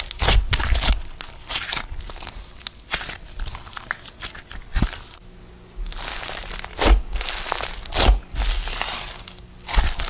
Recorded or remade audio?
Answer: recorded